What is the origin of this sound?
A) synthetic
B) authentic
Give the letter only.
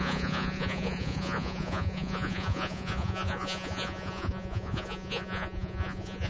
A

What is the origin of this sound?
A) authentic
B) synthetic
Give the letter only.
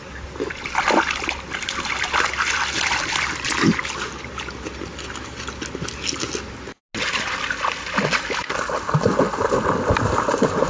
A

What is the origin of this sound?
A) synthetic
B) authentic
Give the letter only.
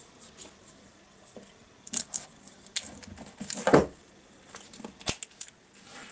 B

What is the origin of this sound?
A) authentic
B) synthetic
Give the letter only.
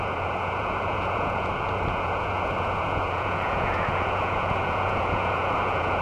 B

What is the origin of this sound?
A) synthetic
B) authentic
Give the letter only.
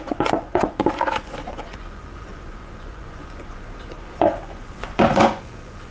A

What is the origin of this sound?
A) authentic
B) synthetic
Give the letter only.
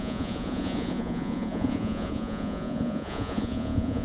B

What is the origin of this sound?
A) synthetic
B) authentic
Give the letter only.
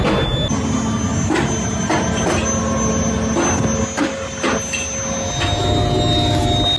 B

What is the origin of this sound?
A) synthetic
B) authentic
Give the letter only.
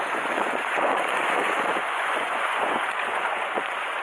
A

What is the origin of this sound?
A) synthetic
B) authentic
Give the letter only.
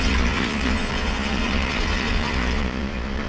A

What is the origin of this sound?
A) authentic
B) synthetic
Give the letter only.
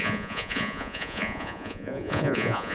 B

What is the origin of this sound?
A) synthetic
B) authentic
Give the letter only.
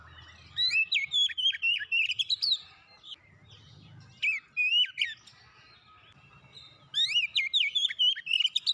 B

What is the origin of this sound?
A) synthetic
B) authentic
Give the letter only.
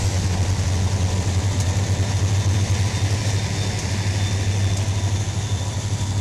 B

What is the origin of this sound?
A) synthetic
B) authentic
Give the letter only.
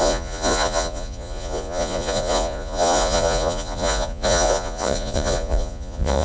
A